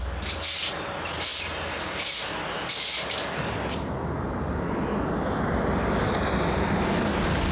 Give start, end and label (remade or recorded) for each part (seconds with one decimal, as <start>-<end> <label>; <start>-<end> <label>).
0.0-7.5 recorded